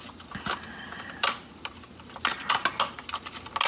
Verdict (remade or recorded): recorded